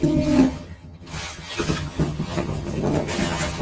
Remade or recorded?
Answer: remade